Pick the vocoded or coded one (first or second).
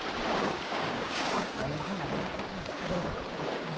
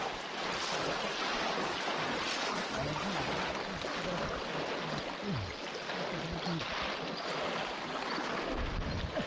first